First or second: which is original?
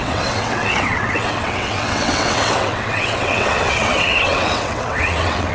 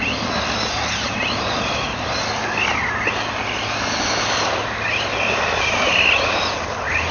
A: second